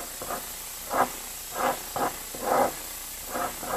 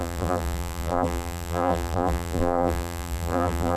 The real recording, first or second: first